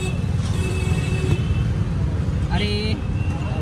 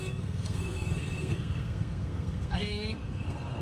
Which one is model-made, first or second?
second